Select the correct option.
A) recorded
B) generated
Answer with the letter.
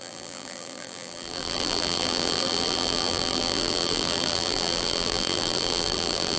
B